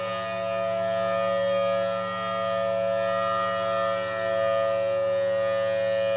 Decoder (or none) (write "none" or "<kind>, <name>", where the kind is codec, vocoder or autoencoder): none